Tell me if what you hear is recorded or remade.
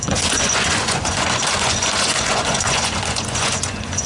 remade